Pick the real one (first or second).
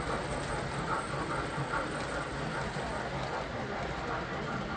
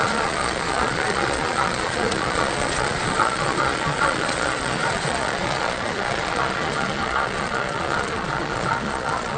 first